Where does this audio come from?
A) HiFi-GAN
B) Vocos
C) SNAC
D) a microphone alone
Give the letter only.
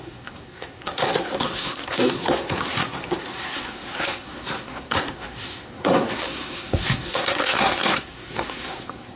C